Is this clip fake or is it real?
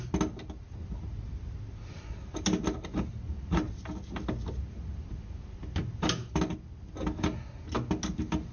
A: real